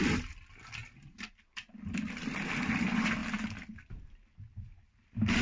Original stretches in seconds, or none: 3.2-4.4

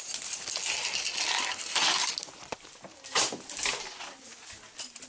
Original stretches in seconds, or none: 0.0-5.1